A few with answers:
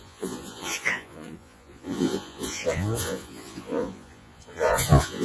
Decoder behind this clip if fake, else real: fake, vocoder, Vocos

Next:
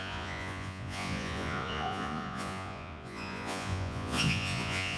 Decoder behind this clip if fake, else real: fake, vocoder, Vocos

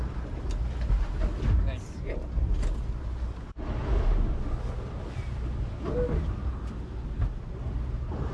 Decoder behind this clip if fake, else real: real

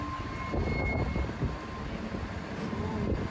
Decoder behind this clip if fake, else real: real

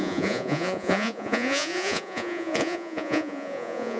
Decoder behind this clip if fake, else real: fake, vocoder, Vocos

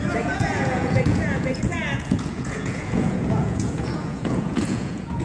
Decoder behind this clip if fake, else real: fake, vocoder, Vocos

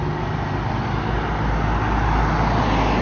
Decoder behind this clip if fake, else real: real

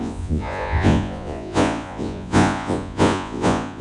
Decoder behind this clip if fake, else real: fake, vocoder, Vocos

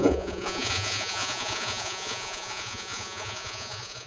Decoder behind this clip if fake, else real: fake, vocoder, Vocos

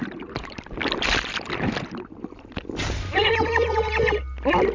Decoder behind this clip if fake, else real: real